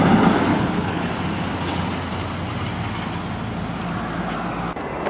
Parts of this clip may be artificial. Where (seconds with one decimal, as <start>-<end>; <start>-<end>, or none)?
0.5-1.1